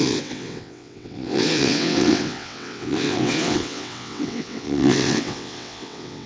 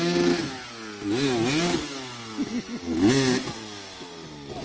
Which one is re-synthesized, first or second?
first